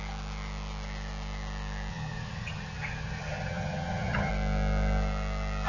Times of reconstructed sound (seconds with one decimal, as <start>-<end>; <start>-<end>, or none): 1.9-4.3